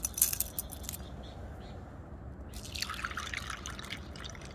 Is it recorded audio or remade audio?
recorded